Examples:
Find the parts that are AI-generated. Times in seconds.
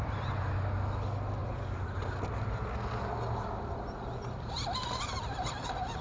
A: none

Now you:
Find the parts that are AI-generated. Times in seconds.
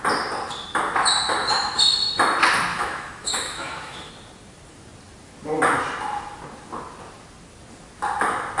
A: 2.7-4.1 (autoencoder, DAC-VAE)